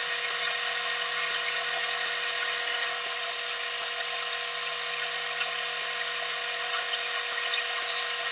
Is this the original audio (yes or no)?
yes